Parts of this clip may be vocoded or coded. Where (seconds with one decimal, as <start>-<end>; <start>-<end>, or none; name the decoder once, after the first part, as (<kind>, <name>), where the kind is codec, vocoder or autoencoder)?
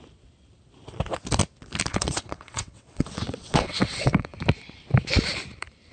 1.9-4.4 (vocoder, WaveNeXt)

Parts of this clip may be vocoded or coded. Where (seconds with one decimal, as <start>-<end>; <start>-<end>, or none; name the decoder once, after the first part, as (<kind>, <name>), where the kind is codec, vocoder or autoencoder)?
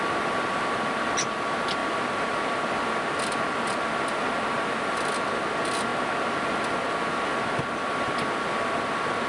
none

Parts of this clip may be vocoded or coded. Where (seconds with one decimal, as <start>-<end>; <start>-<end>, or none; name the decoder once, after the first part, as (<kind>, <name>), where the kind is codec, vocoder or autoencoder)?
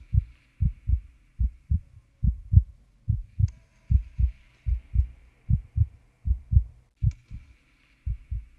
1.3-3.8 (vocoder, BigVGAN v2); 5.2-6.4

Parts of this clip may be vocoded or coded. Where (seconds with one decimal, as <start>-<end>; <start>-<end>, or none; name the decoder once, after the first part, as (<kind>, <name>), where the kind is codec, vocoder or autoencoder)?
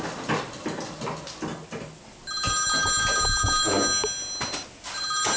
none